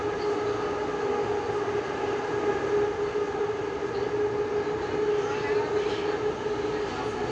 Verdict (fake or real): real